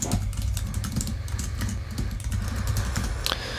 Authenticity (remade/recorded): recorded